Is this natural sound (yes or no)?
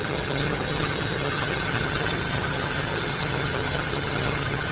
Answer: no